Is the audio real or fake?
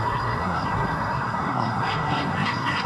fake